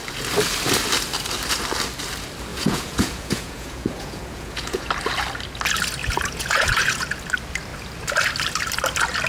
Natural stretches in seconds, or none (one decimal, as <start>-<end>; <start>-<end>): 0.0-2.5; 4.9-6.0; 7.2-9.3